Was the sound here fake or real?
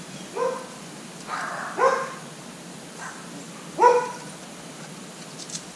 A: real